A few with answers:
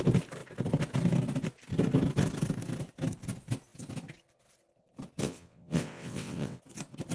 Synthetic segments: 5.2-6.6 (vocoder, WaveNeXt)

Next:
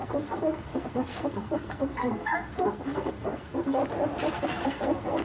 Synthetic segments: 0.0-3.8 (codec, SNAC); 4.3-5.2

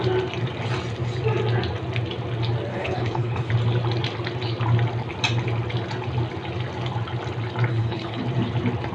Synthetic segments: 2.7-3.5 (codec, HILCodec); 7.7-8.2

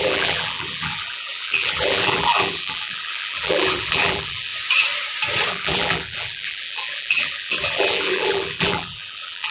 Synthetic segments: 0.0-4.5 (vocoder, BigVGAN v2); 5.5-9.5

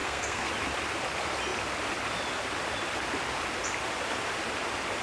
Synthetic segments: 0.0-0.5 (codec, SNAC)

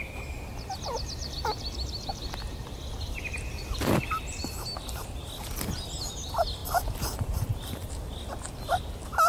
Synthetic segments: none